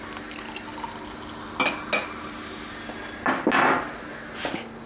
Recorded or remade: recorded